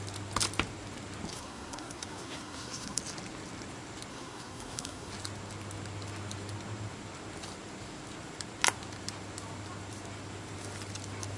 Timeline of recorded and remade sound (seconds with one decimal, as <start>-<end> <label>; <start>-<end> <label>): 0.0-1.3 recorded; 1.3-3.0 remade; 3.0-4.1 recorded; 4.1-5.1 remade; 5.1-11.4 recorded